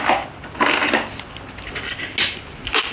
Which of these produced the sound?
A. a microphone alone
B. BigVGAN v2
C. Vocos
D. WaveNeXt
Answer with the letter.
A